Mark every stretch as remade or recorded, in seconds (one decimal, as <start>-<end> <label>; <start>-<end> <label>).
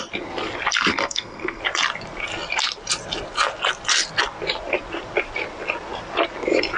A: 0.0-0.9 recorded; 0.9-1.6 remade; 1.6-6.8 recorded